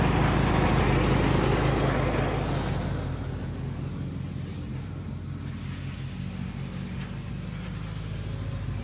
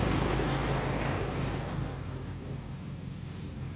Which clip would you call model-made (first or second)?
second